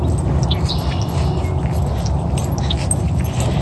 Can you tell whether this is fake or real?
real